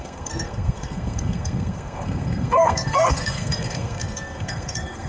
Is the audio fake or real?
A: fake